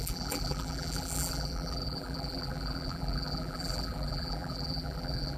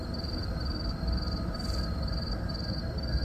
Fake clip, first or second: first